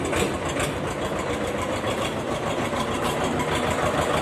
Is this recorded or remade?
recorded